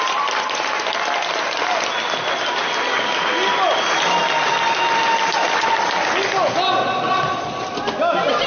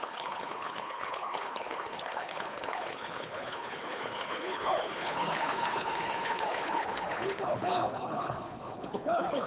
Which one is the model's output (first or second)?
second